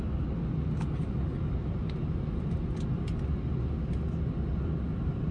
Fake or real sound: real